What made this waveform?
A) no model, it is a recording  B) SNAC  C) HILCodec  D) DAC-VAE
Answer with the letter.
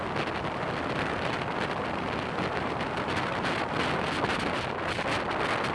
A